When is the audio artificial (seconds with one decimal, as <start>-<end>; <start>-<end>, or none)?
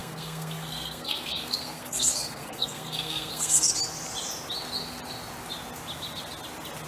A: 0.0-3.7